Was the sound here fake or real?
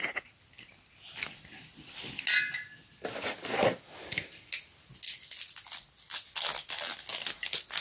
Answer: real